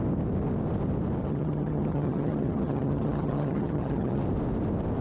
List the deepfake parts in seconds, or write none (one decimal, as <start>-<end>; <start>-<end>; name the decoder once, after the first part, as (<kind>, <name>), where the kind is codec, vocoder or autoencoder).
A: 1.2-4.2 (vocoder, HiFi-GAN)